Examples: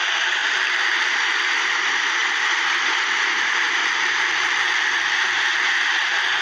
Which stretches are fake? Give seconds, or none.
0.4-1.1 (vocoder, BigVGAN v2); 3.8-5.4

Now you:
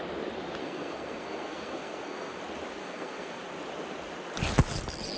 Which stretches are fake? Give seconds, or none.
0.6-2.4 (codec, SNAC); 2.8-3.4

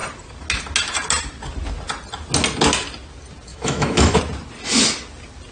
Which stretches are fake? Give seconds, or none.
3.5-4.2 (autoencoder, DAC-VAE)